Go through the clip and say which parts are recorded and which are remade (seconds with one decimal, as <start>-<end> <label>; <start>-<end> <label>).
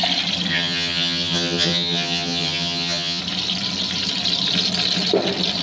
0.0-0.5 recorded; 0.5-3.2 remade; 3.2-5.6 recorded